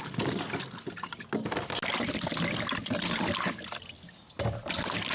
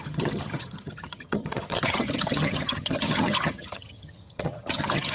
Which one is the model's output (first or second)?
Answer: second